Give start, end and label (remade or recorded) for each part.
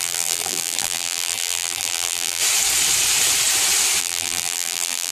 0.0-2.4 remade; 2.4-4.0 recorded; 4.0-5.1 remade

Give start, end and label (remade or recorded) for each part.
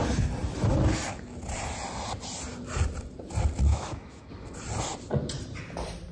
0.0-3.7 recorded; 3.7-4.3 remade; 4.3-6.1 recorded